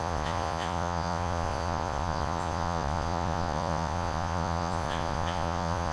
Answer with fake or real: fake